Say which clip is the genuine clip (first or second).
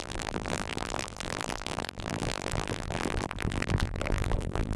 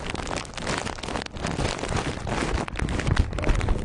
second